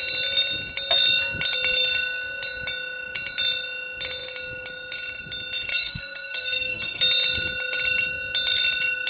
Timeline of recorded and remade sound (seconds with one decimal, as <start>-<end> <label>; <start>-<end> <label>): 0.0-5.7 recorded; 5.7-7.0 remade; 7.0-9.1 recorded